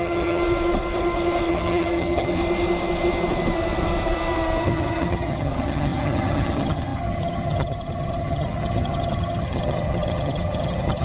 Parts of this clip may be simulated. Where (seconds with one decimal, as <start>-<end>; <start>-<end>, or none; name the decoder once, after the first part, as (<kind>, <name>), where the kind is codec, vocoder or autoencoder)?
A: 0.0-0.4 (vocoder, HiFi-GAN); 1.5-2.4; 4.6-11.0